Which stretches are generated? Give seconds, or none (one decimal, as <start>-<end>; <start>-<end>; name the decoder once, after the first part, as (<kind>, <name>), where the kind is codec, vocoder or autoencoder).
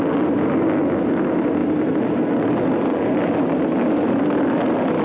none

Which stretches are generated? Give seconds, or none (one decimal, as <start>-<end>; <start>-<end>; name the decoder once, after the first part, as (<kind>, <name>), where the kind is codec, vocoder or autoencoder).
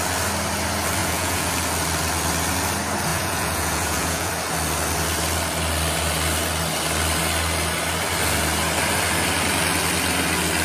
1.0-1.5 (vocoder, Vocos); 3.1-4.3